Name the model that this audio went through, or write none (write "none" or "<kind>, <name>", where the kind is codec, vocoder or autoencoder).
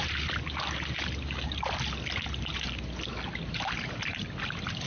none